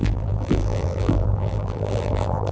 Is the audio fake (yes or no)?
yes